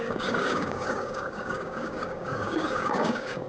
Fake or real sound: fake